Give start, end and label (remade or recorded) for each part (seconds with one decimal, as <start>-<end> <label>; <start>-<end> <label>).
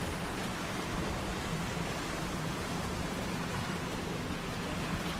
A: 0.0-0.4 recorded; 0.4-3.5 remade; 3.5-5.2 recorded